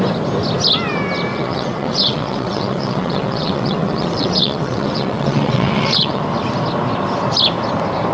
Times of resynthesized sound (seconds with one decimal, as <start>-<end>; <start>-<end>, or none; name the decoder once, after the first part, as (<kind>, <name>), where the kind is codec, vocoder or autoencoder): 1.3-6.2 (vocoder, WaveNeXt)